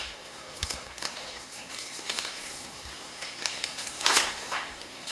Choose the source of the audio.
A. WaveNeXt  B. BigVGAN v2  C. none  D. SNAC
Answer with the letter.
D